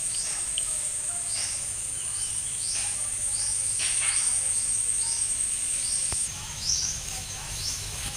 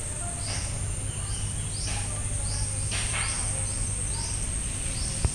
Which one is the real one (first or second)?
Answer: second